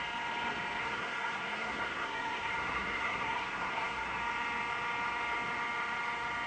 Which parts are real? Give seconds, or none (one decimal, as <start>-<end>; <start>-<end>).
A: 0.0-0.8; 4.2-6.5